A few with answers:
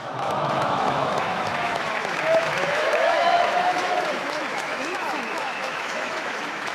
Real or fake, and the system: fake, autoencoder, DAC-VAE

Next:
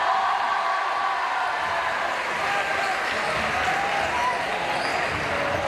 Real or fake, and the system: real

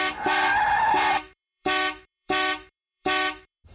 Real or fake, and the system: fake, autoencoder, DAC-VAE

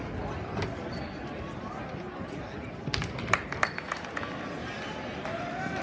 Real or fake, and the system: real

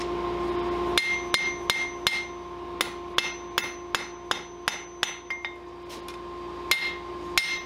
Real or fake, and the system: real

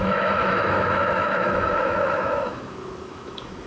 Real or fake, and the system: fake, autoencoder, DAC-VAE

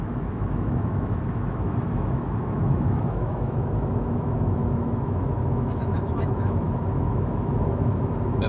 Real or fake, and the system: fake, autoencoder, DAC-VAE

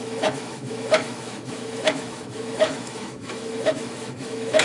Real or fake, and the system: fake, autoencoder, DAC-VAE